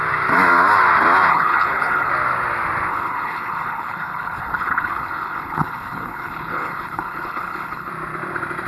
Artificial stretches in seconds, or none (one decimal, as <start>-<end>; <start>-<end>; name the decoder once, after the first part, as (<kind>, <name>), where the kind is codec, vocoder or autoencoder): 1.3-2.1 (codec, HILCodec); 2.9-7.9